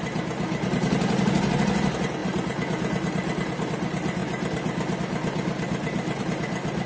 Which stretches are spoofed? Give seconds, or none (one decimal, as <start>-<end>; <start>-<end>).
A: none